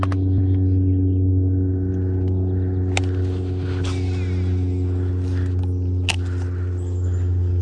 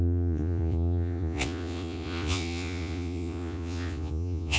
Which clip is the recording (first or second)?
first